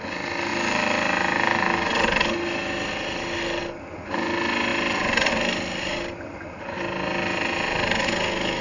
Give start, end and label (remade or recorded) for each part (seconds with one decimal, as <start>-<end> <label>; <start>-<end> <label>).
0.0-8.6 recorded